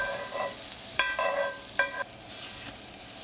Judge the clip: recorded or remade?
recorded